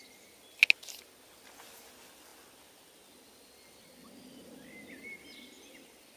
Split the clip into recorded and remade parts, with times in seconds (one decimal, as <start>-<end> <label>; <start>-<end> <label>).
0.0-6.2 recorded